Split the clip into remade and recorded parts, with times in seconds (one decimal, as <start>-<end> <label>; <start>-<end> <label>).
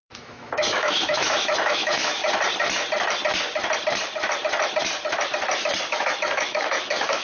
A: 0.0-2.2 remade; 2.2-5.9 recorded; 5.9-7.2 remade